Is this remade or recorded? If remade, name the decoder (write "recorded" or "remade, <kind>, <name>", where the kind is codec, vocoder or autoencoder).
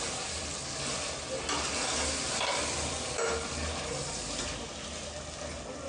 recorded